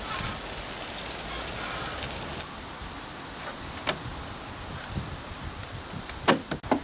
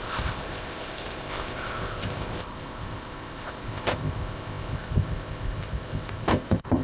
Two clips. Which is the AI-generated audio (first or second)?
second